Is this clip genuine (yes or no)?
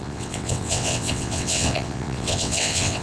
no